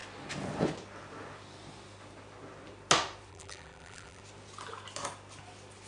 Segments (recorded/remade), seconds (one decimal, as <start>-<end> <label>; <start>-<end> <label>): 0.0-3.3 recorded; 3.3-4.2 remade; 4.2-5.9 recorded